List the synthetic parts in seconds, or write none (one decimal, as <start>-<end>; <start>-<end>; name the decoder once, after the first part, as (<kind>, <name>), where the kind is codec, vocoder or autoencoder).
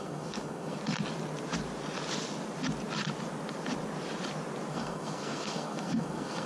0.0-0.8 (codec, SNAC); 4.7-6.5